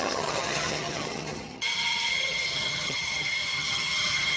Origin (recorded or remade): remade